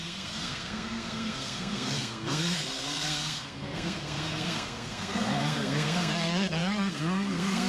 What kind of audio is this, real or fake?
fake